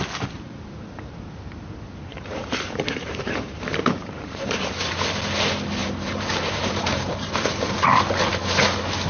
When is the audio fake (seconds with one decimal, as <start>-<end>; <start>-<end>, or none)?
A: 2.1-4.9; 5.8-7.7